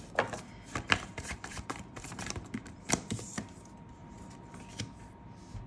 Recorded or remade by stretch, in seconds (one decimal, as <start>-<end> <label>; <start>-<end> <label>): 0.0-1.1 recorded; 1.1-3.6 remade; 3.6-5.7 recorded